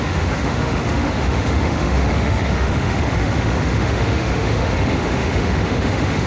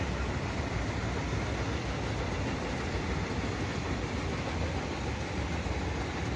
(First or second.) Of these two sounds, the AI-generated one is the first